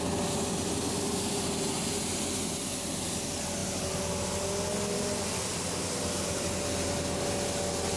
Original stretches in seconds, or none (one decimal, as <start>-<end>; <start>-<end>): 0.0-8.0